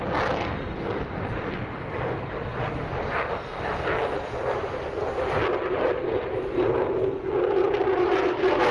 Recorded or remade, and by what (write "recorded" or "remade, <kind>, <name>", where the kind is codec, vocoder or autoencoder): recorded